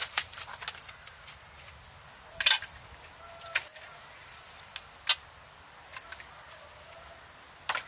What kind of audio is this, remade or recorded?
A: recorded